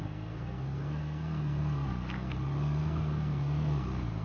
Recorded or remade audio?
remade